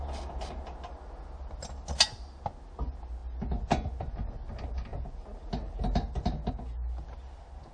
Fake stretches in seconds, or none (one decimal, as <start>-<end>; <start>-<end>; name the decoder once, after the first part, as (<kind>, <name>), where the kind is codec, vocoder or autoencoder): none